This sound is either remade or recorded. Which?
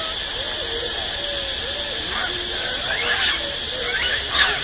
recorded